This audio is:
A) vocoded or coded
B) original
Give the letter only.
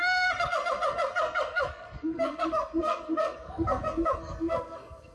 A